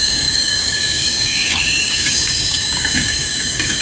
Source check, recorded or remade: remade